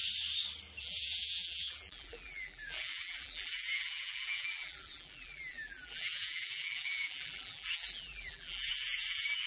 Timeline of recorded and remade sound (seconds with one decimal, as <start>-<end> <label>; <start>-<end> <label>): 0.0-0.8 recorded; 0.8-9.5 remade

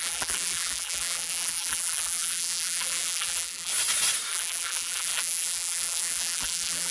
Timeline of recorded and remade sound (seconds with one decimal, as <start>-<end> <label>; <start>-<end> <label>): 0.0-3.7 remade; 3.7-4.3 recorded; 4.3-6.9 remade

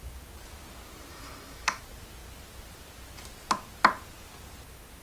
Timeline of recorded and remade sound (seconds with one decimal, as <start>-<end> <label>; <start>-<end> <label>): 0.0-1.1 recorded; 1.1-1.8 remade; 1.8-5.0 recorded